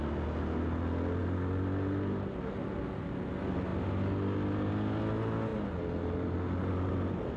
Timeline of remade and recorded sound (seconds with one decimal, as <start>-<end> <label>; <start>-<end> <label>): 0.0-7.4 recorded